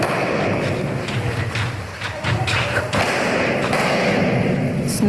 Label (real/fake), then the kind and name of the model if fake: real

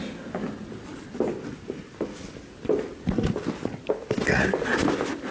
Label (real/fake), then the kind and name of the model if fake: real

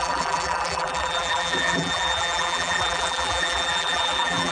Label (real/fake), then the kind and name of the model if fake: fake, vocoder, BigVGAN v2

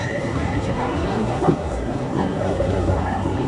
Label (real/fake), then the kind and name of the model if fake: fake, codec, SNAC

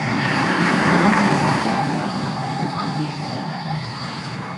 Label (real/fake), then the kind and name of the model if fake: fake, codec, SNAC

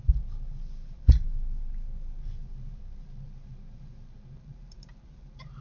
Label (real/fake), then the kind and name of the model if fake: fake, vocoder, BigVGAN v2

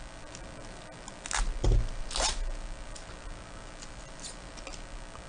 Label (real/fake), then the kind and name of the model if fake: real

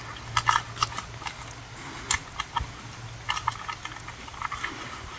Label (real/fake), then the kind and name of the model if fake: real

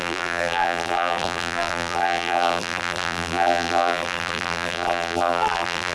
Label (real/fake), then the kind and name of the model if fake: fake, vocoder, BigVGAN v2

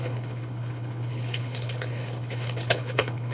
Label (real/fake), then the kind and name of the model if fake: fake, codec, HILCodec